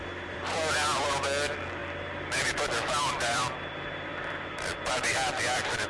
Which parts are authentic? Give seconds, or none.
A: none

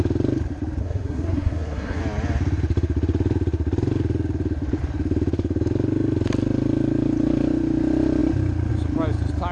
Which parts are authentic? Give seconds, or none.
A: 0.0-0.8; 2.0-9.5

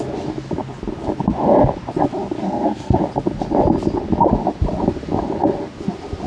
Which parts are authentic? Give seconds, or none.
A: 0.0-2.4; 3.0-6.3

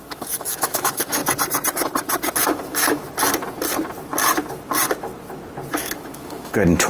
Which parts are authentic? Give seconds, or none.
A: 1.2-2.4; 3.0-5.7

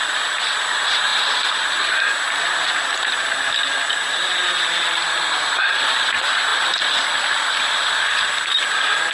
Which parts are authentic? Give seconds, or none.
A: 0.0-9.1

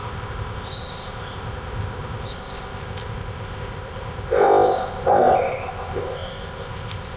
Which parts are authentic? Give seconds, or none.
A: none